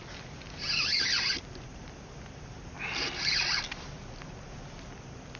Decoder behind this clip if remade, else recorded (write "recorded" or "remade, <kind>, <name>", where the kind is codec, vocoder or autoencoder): recorded